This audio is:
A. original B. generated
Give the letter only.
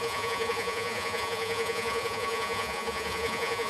B